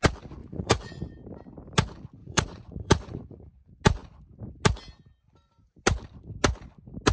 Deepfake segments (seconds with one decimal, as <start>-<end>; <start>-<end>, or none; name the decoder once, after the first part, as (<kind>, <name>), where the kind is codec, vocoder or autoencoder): 0.4-1.0 (vocoder, Vocos); 2.2-3.6